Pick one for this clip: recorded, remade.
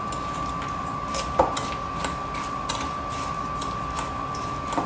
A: recorded